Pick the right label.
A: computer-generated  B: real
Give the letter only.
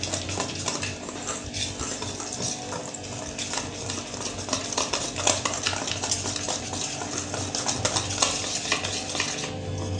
B